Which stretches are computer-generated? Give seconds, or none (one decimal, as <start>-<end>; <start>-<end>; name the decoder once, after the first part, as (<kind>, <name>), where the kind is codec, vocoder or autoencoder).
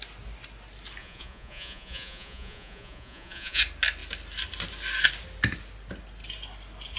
1.0-3.6 (vocoder, Vocos)